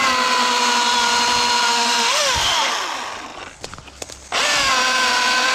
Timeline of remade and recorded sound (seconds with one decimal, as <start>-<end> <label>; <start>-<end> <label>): 0.0-1.7 recorded; 1.7-2.7 remade; 2.7-5.5 recorded